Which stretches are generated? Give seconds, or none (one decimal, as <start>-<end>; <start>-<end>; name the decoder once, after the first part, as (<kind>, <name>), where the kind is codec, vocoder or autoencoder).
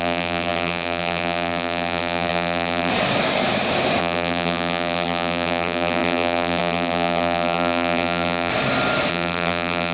0.0-2.9 (vocoder, BigVGAN v2); 4.0-8.5; 9.1-9.9